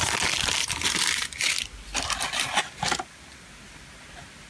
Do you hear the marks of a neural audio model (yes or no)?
no